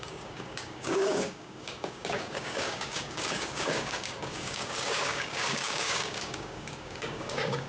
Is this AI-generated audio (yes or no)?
yes